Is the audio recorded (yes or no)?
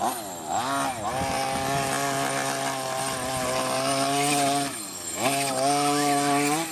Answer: yes